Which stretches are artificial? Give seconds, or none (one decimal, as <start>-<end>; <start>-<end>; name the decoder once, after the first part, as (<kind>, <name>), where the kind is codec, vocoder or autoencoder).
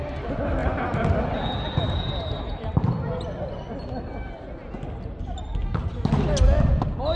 none